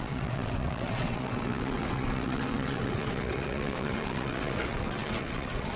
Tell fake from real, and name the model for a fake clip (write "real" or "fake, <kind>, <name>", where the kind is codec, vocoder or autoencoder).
fake, vocoder, WaveNeXt